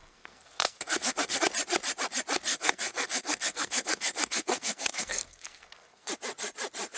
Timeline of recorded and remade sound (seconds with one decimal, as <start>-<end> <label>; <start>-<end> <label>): 0.0-1.4 remade; 1.4-2.5 recorded; 2.5-6.1 remade; 6.1-7.0 recorded